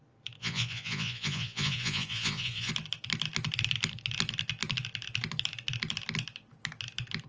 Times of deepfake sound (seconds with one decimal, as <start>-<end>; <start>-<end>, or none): 0.4-2.7